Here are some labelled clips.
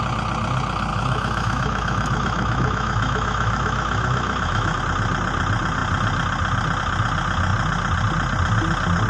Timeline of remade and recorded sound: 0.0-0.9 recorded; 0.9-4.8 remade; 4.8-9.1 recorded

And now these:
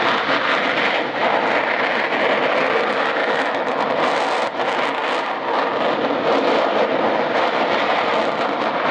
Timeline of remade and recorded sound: 0.0-3.2 recorded; 3.2-3.8 remade; 3.8-8.9 recorded

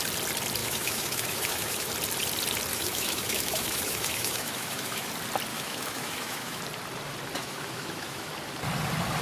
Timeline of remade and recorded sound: 0.0-0.6 recorded; 0.6-1.9 remade; 1.9-2.7 recorded; 2.7-5.1 remade; 5.1-5.5 recorded; 5.5-6.6 remade; 6.6-7.4 recorded; 7.4-8.3 remade; 8.3-9.2 recorded

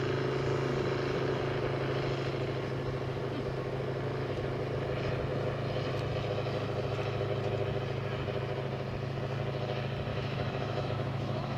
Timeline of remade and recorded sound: 0.0-10.1 recorded; 10.1-11.6 remade

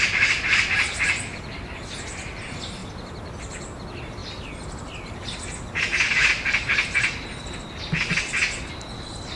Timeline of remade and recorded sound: 0.0-9.4 recorded